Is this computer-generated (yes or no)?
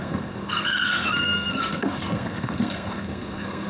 yes